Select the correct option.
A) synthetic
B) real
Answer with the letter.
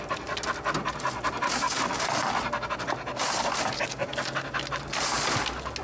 B